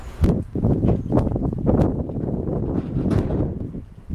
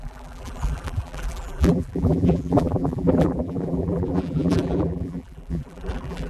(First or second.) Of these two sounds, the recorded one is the first